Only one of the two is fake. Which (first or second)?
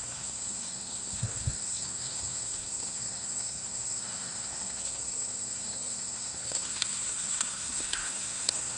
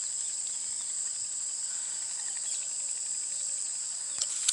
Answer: first